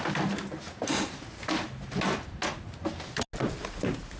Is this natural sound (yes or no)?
yes